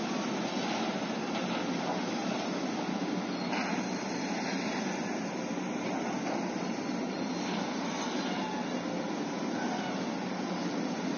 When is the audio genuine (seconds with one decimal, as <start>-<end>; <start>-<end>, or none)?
0.0-11.2